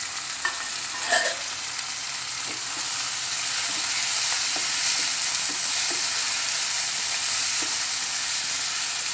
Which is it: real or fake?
real